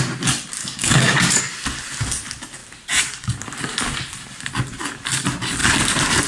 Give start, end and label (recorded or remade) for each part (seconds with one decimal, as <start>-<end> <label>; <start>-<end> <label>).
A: 0.0-0.6 recorded; 0.6-1.4 remade; 1.4-6.3 recorded